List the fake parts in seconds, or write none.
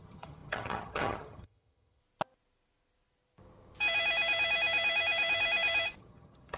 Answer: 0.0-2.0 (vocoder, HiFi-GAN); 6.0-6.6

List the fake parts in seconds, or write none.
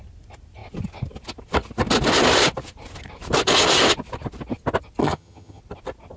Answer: 5.0-5.6 (vocoder, HiFi-GAN)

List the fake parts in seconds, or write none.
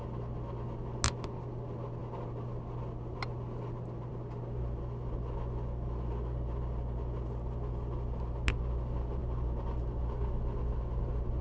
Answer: none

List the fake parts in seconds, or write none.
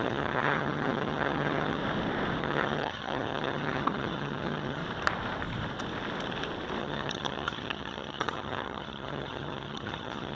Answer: 0.0-1.8 (vocoder, HiFi-GAN); 2.4-4.8; 6.8-10.3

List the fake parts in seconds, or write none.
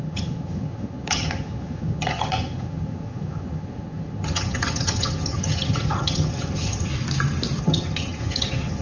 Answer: 0.0-6.9 (vocoder, HiFi-GAN); 7.6-8.8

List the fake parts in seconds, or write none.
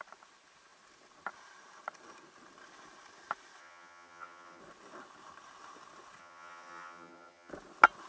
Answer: 3.6-4.6 (vocoder, HiFi-GAN); 6.2-7.5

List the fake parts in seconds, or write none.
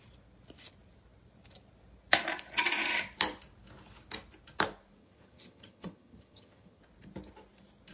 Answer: 5.0-6.8 (vocoder, HiFi-GAN)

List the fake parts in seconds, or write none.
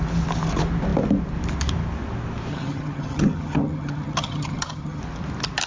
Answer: 2.5-5.0 (vocoder, HiFi-GAN)